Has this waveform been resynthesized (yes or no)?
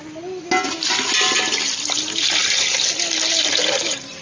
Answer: no